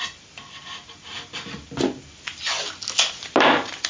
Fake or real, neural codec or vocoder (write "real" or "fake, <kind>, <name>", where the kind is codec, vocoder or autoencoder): real